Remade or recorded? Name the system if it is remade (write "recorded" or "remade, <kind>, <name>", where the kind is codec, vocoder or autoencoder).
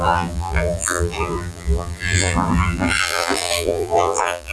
remade, vocoder, BigVGAN v2